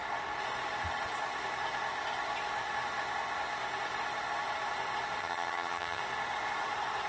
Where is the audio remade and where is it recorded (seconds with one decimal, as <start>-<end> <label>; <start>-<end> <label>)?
0.0-5.2 recorded; 5.2-6.0 remade; 6.0-7.1 recorded